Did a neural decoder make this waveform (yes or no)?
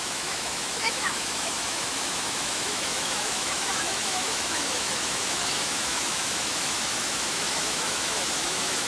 yes